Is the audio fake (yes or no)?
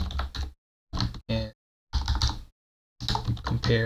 no